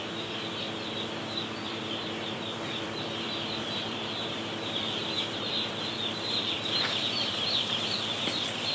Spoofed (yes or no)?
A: yes